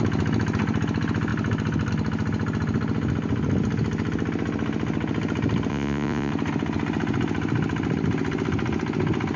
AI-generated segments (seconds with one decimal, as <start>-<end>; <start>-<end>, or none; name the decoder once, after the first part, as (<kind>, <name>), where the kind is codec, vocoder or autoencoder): 5.7-6.3 (vocoder, Vocos)